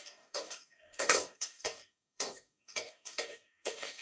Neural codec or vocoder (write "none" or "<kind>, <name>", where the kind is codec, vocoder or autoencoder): codec, DAC